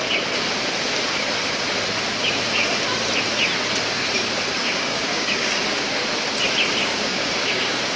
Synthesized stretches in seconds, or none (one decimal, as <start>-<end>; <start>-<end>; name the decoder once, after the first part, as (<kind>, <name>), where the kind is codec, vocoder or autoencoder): 4.6-5.5 (codec, DAC); 6.8-8.0